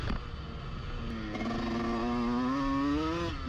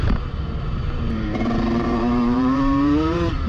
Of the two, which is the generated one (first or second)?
second